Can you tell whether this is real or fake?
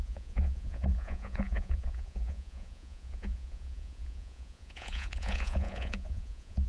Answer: fake